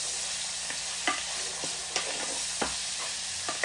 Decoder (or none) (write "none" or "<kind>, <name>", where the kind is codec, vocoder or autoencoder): none